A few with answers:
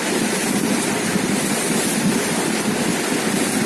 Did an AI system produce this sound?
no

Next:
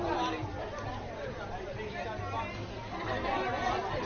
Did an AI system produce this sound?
no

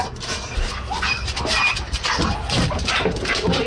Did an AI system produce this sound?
no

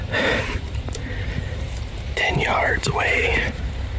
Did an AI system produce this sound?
yes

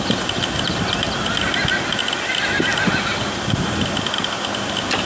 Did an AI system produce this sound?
no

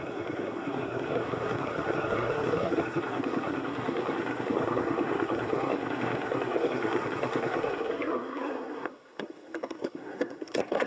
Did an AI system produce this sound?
yes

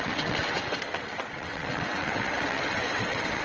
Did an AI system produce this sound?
yes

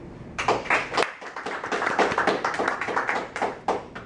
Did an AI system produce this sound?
no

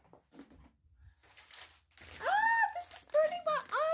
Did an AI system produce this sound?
no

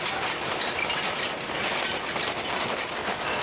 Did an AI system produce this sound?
no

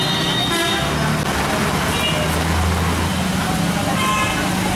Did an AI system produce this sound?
no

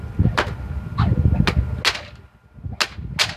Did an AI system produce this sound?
no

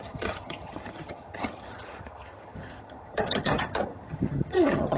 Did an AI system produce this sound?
yes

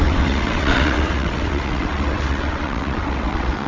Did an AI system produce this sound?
yes